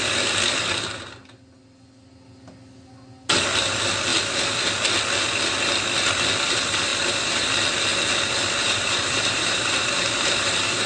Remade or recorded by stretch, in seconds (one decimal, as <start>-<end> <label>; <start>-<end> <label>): 0.0-8.6 recorded; 8.6-10.9 remade

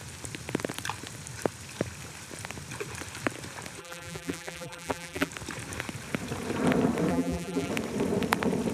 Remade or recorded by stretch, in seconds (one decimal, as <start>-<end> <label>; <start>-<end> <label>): 0.0-3.8 recorded; 3.8-5.3 remade; 5.3-7.1 recorded; 7.1-7.7 remade; 7.7-8.7 recorded

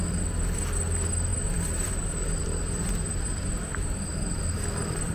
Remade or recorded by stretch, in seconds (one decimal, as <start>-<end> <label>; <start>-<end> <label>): 0.0-1.3 recorded; 1.3-4.4 remade; 4.4-5.1 recorded

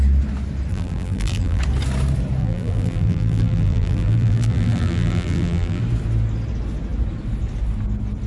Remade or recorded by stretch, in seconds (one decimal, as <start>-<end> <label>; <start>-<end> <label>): 0.0-0.7 recorded; 0.7-1.6 remade; 1.6-2.4 recorded; 2.4-5.8 remade; 5.8-8.3 recorded